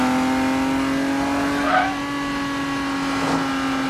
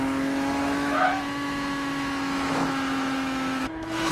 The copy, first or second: second